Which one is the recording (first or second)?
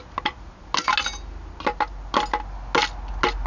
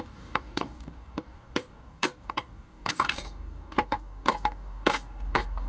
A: first